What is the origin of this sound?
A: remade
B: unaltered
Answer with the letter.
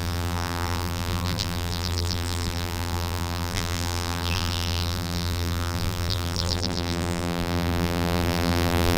A